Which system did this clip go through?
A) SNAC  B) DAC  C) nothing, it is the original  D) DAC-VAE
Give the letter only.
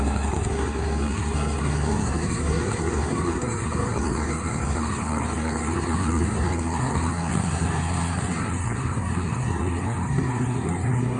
A